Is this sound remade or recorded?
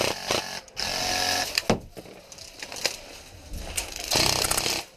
recorded